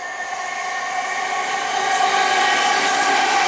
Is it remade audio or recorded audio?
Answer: recorded